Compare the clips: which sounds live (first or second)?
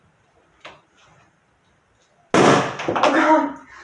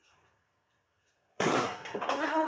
first